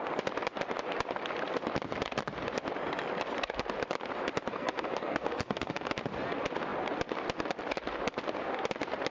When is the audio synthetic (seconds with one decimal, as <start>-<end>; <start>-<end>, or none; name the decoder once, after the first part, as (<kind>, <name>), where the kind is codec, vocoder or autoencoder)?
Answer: 4.5-6.0 (codec, SNAC)